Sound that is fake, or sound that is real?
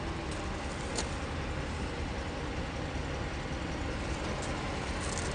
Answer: real